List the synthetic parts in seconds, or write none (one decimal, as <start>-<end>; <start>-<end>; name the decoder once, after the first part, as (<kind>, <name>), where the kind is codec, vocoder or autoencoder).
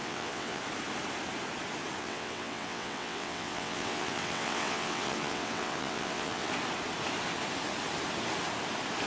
0.0-0.6 (vocoder, WaveNeXt); 2.0-6.5